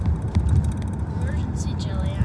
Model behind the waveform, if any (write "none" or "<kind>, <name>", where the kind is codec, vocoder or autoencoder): none